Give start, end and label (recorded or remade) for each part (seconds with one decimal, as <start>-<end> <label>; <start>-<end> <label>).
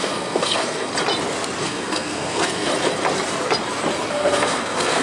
0.0-0.9 remade; 0.9-1.6 recorded; 1.6-2.7 remade; 2.7-4.1 recorded; 4.1-5.0 remade